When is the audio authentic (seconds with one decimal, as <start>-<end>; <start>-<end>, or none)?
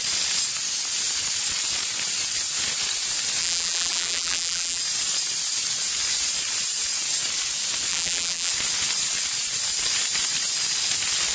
0.0-3.4; 4.8-7.9; 8.5-11.3